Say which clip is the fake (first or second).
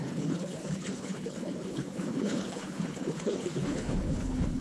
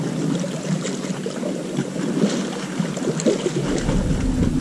first